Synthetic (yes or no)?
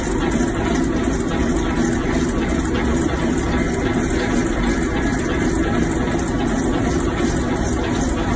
no